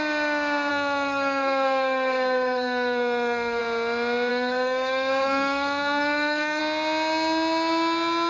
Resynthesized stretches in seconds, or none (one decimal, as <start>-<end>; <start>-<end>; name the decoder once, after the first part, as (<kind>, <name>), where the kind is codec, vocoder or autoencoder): 0.7-3.6 (codec, SNAC); 4.3-6.6